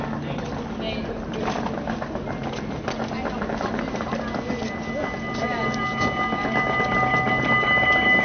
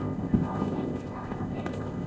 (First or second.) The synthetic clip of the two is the second